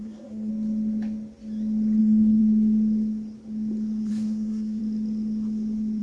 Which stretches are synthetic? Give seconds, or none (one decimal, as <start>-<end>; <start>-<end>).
0.0-0.5; 2.0-2.4; 4.1-4.8